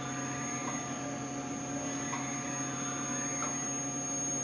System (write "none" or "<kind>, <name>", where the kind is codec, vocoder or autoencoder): none